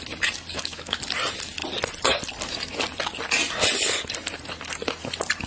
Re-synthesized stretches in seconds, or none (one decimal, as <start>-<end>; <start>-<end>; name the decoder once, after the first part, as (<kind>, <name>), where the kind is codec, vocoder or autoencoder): 0.5-1.0 (autoencoder, DAC-VAE)